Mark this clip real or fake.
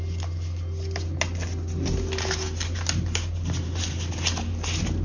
real